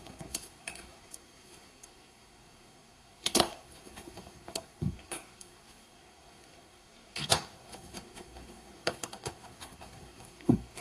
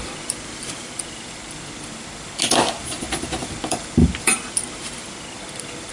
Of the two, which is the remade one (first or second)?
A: first